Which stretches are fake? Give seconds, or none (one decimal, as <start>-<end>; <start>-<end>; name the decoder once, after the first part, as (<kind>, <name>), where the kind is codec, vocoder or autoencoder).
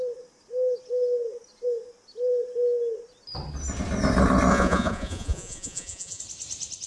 4.5-6.2 (vocoder, Vocos)